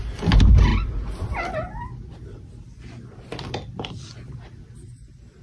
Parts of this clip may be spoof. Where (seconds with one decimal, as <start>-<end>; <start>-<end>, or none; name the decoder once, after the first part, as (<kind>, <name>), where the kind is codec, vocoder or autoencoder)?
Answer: none